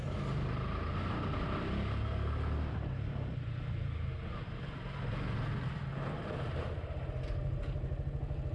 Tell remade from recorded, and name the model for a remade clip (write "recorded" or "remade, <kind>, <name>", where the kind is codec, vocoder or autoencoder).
recorded